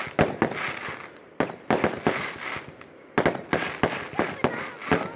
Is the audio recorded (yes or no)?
yes